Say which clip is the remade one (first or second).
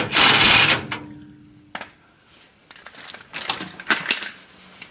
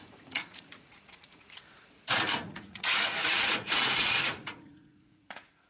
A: second